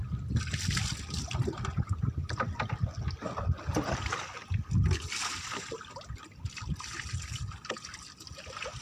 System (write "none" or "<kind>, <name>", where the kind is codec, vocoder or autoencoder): none